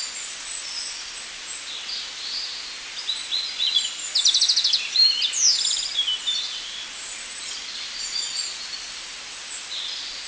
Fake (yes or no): no